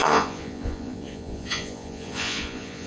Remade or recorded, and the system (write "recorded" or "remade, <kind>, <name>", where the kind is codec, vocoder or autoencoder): remade, vocoder, Vocos